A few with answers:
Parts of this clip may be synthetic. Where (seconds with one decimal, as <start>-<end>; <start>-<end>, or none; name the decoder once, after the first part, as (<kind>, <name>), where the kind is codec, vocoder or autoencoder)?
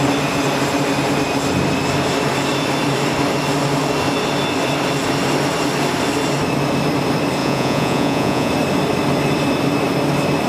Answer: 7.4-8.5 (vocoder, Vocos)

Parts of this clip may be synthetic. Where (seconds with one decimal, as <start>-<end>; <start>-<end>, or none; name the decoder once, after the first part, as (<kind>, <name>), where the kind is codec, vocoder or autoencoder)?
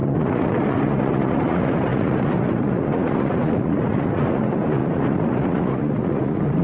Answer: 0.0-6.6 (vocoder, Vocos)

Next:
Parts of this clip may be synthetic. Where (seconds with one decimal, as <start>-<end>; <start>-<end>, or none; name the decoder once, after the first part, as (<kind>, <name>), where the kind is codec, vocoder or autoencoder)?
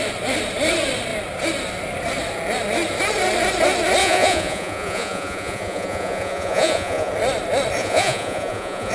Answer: 4.0-7.1 (vocoder, Vocos); 7.8-8.9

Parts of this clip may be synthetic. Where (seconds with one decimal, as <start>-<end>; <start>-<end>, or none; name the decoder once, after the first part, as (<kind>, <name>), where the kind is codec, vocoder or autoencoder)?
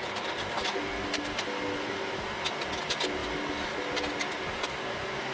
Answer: none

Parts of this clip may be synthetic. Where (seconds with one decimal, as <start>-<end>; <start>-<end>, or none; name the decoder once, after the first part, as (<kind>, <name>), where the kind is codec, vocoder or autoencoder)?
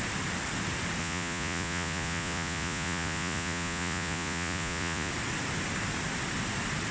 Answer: 1.0-5.1 (vocoder, Vocos)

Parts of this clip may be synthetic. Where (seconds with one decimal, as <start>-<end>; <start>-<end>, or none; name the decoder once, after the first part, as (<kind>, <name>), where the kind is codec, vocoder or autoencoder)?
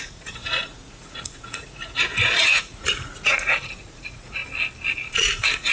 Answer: 0.0-4.4 (vocoder, Vocos); 5.1-5.7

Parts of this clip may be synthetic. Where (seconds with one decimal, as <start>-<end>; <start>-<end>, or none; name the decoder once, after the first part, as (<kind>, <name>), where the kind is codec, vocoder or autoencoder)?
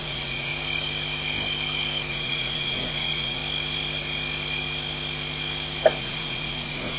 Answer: 0.0-0.5 (vocoder, Vocos); 2.1-3.4; 6.0-7.0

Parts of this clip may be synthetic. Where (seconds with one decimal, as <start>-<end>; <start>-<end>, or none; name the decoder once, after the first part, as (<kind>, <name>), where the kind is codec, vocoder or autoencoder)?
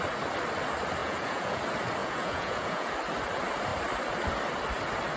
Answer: 1.0-1.6 (vocoder, Vocos); 2.0-2.9